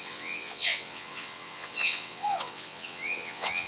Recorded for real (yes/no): no